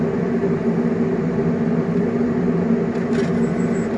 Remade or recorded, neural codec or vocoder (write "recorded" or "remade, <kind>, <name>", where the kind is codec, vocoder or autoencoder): recorded